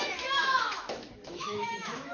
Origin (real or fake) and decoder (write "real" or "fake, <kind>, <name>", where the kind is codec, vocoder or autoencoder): fake, autoencoder, DAC-VAE